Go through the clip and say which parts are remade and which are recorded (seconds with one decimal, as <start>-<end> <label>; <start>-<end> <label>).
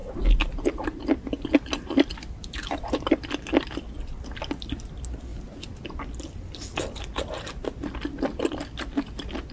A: 0.0-9.5 recorded